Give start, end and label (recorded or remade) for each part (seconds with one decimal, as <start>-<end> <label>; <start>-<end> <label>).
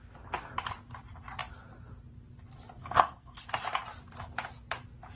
0.0-2.8 recorded; 2.8-3.4 remade; 3.4-5.2 recorded